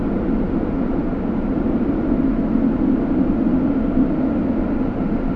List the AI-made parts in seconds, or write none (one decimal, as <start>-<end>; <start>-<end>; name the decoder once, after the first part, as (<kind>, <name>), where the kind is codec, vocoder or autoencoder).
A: 1.0-1.6 (vocoder, BigVGAN v2)